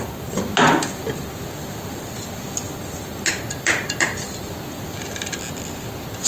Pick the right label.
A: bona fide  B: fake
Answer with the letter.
A